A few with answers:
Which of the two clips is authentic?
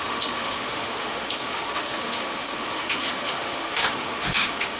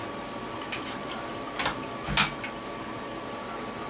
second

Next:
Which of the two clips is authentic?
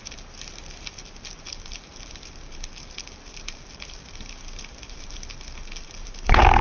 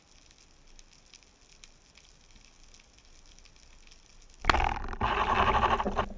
second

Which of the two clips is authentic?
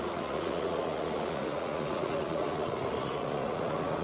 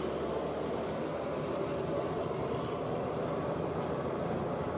second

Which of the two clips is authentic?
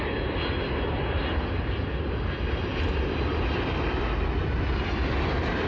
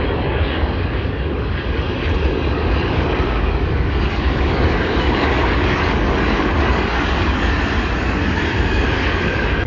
first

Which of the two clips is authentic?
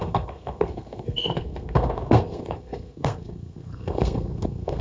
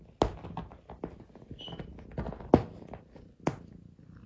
second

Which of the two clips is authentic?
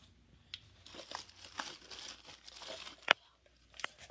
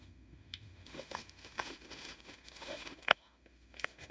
first